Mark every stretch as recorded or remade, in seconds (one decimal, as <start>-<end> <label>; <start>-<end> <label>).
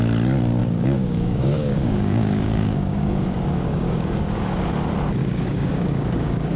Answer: 0.0-0.6 recorded; 0.6-4.6 remade; 4.6-5.2 recorded; 5.2-6.6 remade